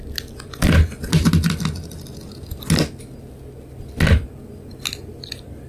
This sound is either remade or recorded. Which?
recorded